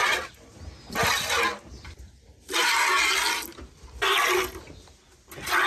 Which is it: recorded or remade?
recorded